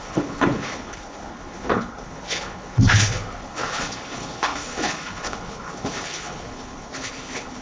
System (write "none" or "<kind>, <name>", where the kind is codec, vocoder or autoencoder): codec, HILCodec